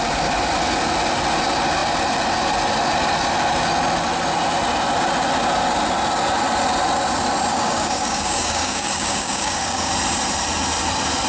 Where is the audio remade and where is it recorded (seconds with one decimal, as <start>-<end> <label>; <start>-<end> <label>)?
0.0-7.5 recorded; 7.5-9.9 remade; 9.9-11.3 recorded